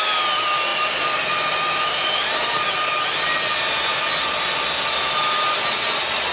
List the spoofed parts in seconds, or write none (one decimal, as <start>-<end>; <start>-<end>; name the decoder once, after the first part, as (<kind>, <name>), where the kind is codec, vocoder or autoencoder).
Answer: none

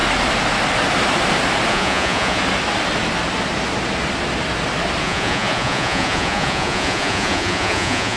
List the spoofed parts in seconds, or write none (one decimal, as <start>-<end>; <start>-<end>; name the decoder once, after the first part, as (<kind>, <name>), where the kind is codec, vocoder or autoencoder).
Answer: 1.7-2.4 (vocoder, Vocos); 5.0-8.2

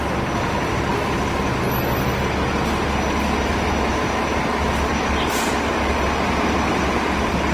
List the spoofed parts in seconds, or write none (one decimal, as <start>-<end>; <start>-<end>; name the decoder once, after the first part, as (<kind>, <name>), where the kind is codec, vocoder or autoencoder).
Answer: none

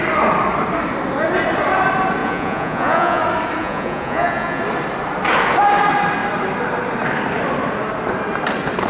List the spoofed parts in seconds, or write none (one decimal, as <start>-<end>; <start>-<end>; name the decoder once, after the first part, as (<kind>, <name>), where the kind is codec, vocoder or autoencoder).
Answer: 2.2-3.2 (vocoder, Vocos); 3.6-4.6

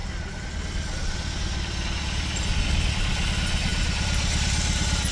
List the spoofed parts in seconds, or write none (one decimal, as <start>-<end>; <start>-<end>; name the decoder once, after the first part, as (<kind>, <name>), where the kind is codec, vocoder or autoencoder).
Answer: none

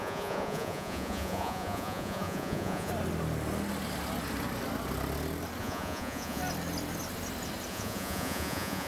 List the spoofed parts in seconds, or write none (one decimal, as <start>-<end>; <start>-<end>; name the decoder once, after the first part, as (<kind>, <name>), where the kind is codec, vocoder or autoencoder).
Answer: 0.0-2.9 (vocoder, Vocos); 5.6-6.4; 7.7-8.9

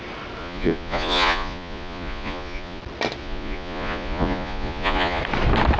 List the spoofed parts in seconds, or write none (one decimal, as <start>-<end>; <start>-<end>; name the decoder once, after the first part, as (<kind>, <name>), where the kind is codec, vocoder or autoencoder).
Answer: 0.4-2.8 (vocoder, Vocos); 3.2-5.2

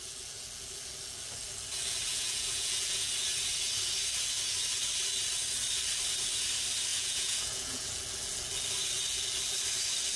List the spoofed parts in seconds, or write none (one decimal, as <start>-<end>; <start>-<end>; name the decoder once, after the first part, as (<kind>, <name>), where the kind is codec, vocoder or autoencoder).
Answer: 2.1-3.1 (vocoder, Vocos); 6.9-7.9